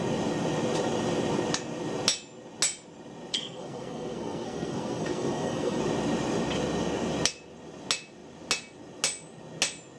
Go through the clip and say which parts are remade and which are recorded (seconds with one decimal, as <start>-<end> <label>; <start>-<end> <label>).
0.0-3.3 recorded; 3.3-5.8 remade; 5.8-10.0 recorded

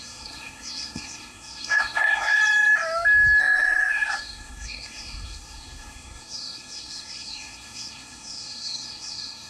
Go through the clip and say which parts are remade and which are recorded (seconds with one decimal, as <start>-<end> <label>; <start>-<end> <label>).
0.0-2.4 remade; 2.4-3.4 recorded; 3.4-9.5 remade

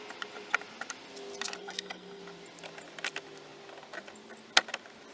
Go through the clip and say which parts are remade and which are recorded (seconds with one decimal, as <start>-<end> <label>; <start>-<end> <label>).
0.0-1.6 recorded; 1.6-2.2 remade; 2.2-5.1 recorded